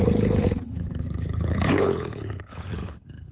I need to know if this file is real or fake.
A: fake